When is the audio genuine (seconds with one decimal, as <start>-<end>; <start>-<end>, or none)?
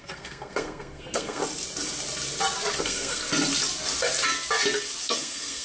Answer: 1.4-2.8; 3.2-5.0